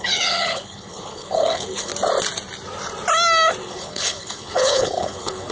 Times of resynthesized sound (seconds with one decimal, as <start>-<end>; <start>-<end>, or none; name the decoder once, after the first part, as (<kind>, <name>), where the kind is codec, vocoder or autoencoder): 0.0-1.9 (codec, HILCodec); 3.6-5.5